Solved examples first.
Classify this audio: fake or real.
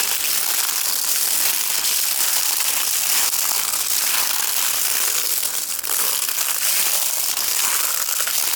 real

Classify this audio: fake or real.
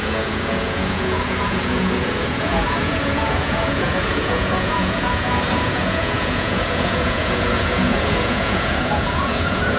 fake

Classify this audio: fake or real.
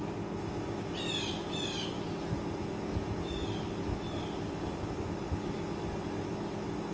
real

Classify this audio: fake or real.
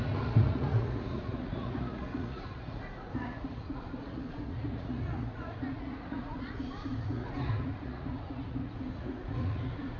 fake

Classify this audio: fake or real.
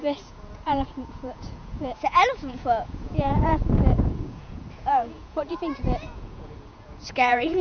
fake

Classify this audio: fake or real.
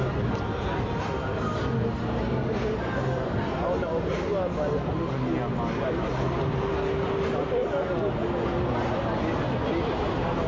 real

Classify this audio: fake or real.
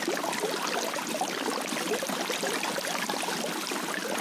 real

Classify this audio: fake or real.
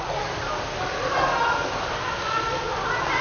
real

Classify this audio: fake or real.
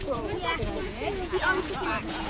fake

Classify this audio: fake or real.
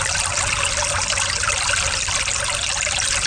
real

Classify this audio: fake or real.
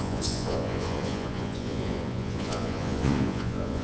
fake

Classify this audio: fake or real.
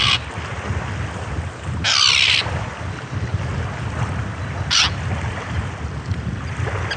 real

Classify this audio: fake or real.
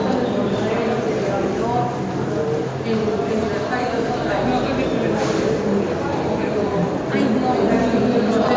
real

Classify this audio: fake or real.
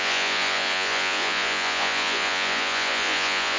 fake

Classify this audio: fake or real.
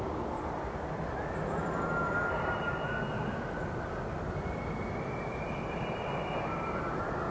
real